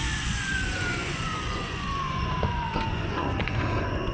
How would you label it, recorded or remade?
remade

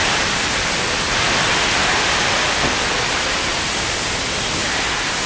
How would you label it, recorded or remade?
recorded